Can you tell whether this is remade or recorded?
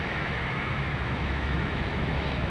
remade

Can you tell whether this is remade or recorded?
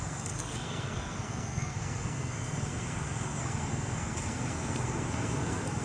remade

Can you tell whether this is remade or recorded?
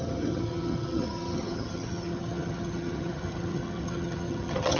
remade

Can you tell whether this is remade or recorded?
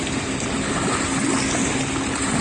recorded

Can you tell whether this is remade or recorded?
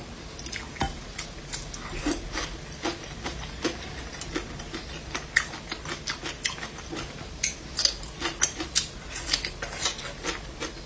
recorded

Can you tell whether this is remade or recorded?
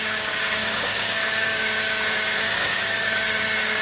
remade